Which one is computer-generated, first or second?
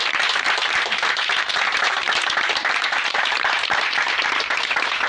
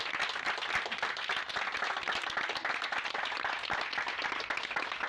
first